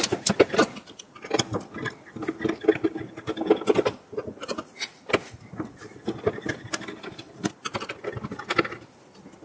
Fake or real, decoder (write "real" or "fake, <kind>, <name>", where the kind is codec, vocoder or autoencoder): real